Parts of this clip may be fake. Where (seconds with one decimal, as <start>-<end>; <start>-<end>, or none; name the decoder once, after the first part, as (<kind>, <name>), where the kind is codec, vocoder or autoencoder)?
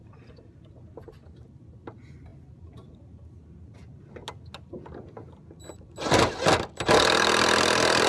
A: none